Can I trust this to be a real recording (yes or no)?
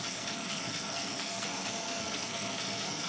no